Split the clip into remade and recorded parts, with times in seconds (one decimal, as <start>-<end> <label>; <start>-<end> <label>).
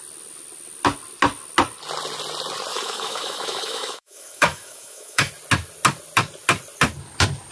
0.0-2.7 recorded; 2.7-5.3 remade; 5.3-7.5 recorded